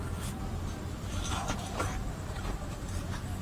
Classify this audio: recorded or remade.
recorded